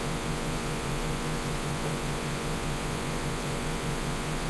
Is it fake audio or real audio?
fake